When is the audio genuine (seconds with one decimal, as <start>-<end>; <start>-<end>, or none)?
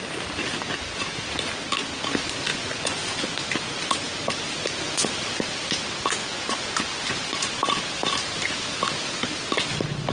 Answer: 0.0-2.5; 3.2-6.2; 7.5-10.1